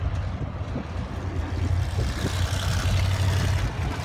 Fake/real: real